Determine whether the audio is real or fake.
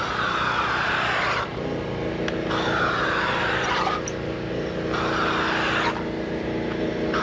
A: real